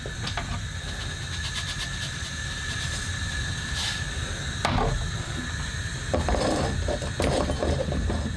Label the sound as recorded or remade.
recorded